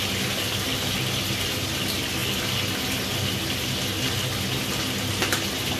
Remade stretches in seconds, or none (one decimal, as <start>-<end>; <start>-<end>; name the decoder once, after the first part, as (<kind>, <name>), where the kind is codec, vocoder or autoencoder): none